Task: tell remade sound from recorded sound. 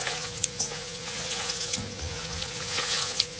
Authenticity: remade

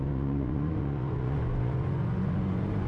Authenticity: remade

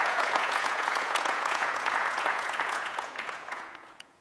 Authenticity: remade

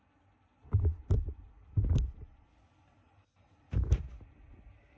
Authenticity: recorded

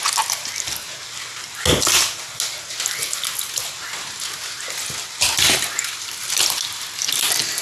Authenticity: recorded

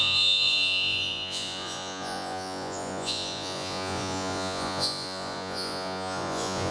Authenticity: remade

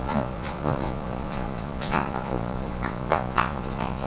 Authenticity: remade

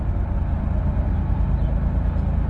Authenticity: recorded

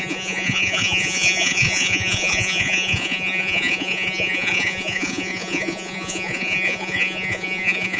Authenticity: remade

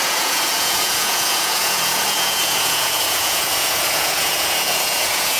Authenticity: remade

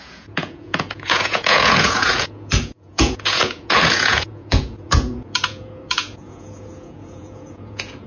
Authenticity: remade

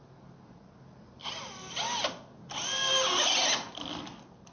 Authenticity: recorded